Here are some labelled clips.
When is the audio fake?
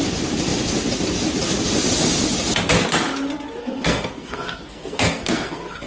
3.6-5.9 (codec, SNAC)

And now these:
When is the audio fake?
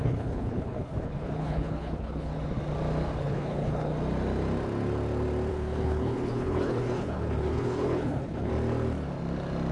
0.0-2.3 (codec, HILCodec); 3.2-3.9; 5.5-8.5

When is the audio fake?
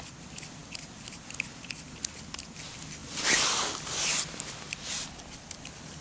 none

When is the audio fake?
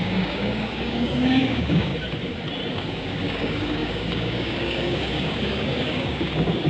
0.0-1.9 (codec, DAC); 2.7-6.7